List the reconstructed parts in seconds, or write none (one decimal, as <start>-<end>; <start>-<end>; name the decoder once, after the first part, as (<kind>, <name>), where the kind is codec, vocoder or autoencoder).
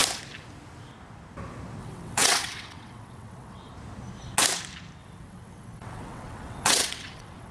1.8-3.7 (vocoder, WaveNeXt); 5.0-7.5